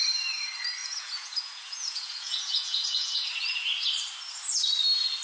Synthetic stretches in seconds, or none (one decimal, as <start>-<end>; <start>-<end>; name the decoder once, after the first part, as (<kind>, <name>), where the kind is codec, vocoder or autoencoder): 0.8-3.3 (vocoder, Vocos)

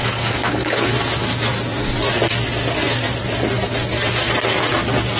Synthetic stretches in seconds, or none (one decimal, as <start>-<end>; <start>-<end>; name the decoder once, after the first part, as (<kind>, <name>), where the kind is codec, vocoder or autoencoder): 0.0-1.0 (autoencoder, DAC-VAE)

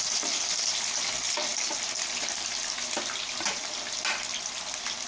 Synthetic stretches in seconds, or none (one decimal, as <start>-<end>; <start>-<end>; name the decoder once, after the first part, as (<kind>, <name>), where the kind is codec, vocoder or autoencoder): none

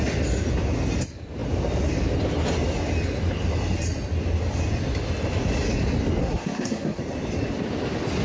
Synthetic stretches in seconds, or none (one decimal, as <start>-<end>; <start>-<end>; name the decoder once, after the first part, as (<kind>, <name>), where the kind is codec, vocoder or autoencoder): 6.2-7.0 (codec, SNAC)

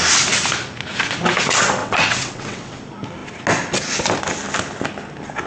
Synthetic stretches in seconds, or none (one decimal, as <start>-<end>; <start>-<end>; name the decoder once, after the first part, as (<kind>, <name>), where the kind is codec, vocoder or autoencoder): 1.8-2.8 (vocoder, WaveNeXt)